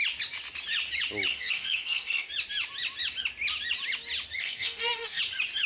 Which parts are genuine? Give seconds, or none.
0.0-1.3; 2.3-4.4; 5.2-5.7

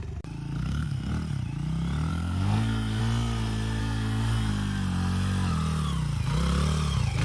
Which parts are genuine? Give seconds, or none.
0.0-0.6; 1.1-2.1; 3.0-3.8; 4.5-7.2

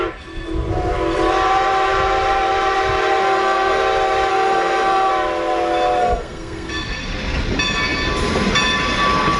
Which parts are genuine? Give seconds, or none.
0.0-3.2; 3.8-4.3; 5.1-6.0; 6.7-9.4

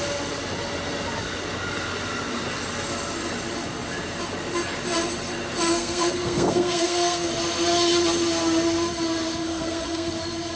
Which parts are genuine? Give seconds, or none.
0.0-5.7; 7.3-9.5; 10.1-10.6